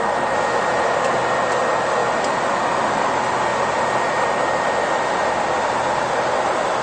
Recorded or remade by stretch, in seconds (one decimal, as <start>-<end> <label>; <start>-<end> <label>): 0.0-6.8 recorded